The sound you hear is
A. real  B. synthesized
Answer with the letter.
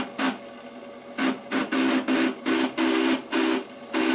A